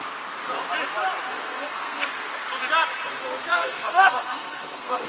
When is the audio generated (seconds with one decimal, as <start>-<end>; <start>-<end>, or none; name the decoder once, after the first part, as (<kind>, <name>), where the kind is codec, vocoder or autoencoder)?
1.3-2.1 (codec, SNAC); 3.5-5.1